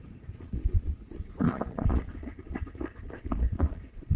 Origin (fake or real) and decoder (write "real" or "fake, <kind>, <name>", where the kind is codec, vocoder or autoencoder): fake, vocoder, Vocos